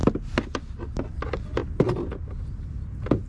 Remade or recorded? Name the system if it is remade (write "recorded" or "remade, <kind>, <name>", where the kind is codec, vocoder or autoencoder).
recorded